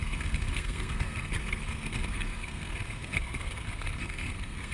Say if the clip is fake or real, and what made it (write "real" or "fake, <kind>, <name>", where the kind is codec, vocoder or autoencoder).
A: fake, codec, SNAC